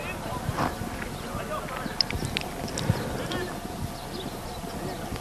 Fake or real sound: real